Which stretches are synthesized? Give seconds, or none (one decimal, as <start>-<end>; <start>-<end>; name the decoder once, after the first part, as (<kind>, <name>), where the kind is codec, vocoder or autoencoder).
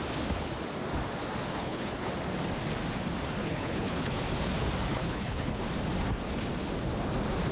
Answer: 1.5-2.1 (codec, HILCodec); 3.4-4.2; 4.9-5.6